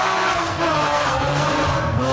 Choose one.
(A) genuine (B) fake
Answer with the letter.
B